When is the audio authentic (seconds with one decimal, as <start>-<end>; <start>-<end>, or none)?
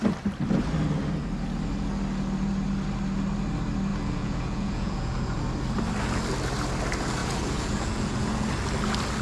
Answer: 0.0-3.9; 5.4-7.2; 8.5-9.2